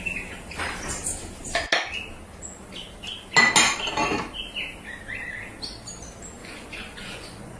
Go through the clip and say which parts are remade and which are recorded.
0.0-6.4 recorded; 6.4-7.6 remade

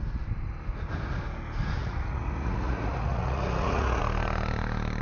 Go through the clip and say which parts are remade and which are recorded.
0.0-1.8 recorded; 1.8-4.0 remade; 4.0-5.0 recorded